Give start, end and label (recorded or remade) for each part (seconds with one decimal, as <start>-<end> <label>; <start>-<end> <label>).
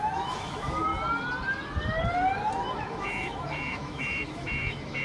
0.0-0.9 remade; 0.9-2.5 recorded; 2.5-5.0 remade